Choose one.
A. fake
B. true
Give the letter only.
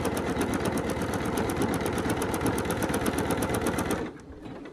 B